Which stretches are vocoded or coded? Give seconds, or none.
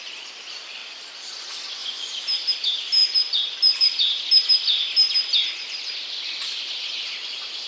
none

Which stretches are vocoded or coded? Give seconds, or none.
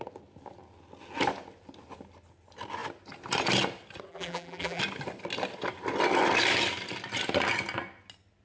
4.1-4.8 (vocoder, BigVGAN v2)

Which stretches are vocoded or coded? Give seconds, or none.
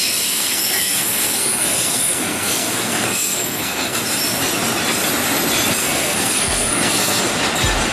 0.0-4.0 (codec, SNAC); 5.8-7.2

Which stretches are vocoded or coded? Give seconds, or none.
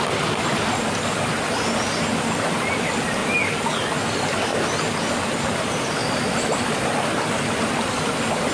none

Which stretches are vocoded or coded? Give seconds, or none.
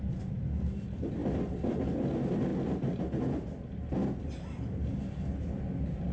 none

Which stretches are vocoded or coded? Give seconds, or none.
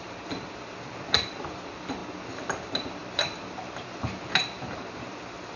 0.0-2.0 (vocoder, BigVGAN v2); 2.6-5.6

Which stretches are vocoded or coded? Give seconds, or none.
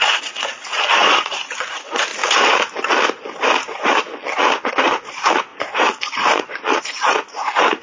0.0-2.1 (vocoder, Vocos); 4.4-7.8